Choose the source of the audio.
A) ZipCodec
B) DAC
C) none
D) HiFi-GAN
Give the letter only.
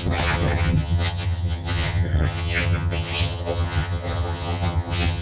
D